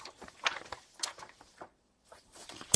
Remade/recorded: remade